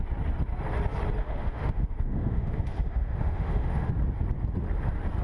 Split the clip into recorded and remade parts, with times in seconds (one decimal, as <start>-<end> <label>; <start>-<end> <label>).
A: 0.0-1.2 recorded; 1.2-3.9 remade; 3.9-5.2 recorded

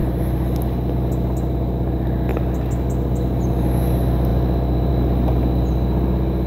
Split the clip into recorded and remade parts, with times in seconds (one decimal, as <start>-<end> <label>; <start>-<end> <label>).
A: 0.0-6.5 recorded